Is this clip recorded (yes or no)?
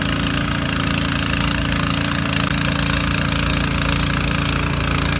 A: yes